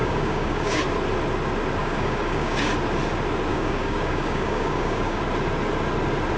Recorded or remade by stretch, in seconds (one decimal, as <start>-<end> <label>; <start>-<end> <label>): 0.0-0.8 remade; 0.8-1.8 recorded; 1.8-2.7 remade; 2.7-3.5 recorded; 3.5-5.2 remade; 5.2-6.4 recorded